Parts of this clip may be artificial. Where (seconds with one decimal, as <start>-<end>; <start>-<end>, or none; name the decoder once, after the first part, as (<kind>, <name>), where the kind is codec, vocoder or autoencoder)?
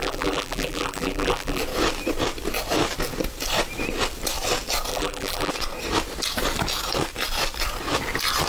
0.0-1.6 (vocoder, BigVGAN v2); 4.9-5.5